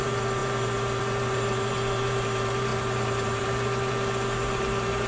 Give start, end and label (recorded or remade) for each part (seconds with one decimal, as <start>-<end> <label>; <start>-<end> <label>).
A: 0.0-5.1 remade